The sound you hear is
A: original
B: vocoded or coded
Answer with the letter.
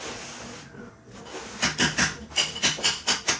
A